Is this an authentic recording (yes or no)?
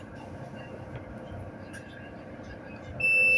yes